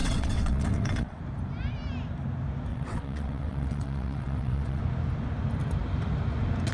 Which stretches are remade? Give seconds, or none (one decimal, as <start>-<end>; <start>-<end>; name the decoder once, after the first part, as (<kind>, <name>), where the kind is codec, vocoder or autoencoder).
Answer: 0.0-1.2 (vocoder, WaveNeXt); 2.7-4.8